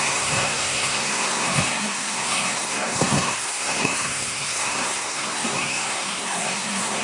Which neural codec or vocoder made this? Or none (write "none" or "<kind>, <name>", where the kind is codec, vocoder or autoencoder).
codec, SNAC